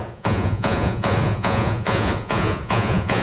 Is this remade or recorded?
remade